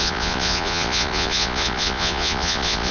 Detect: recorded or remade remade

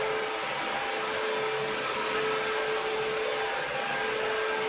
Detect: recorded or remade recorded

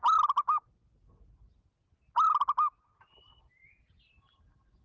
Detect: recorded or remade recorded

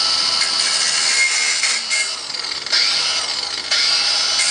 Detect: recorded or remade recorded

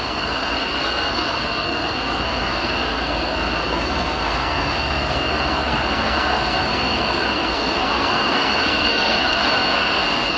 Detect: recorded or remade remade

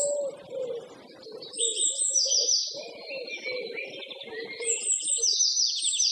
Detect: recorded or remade recorded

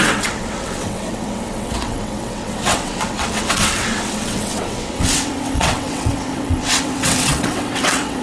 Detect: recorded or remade remade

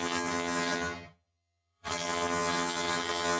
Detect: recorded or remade remade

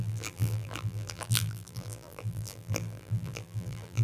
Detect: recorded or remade remade